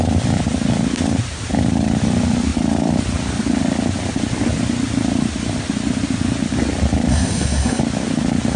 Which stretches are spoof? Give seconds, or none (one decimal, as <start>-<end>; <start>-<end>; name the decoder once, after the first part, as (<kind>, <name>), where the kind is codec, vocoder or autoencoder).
7.1-7.8 (codec, SNAC)

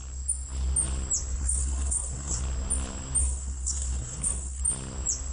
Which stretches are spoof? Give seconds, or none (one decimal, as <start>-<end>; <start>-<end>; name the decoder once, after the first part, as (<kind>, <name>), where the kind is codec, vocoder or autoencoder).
1.3-2.4 (codec, SNAC); 3.2-4.6